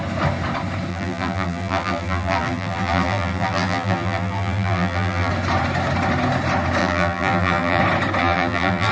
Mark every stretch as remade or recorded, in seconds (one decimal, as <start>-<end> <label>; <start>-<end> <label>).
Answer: 0.0-0.9 recorded; 0.9-5.3 remade; 5.3-6.8 recorded; 6.8-7.8 remade; 7.8-8.2 recorded; 8.2-8.9 remade